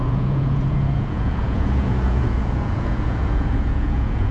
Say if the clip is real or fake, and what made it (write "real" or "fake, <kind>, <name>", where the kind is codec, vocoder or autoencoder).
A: fake, vocoder, Vocos